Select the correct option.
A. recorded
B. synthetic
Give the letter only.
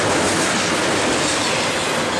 A